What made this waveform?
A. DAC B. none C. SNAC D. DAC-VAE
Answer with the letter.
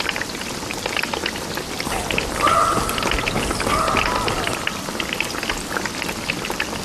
B